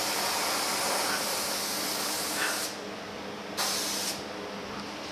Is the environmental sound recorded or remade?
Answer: recorded